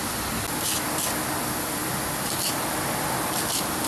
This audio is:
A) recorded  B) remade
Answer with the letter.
A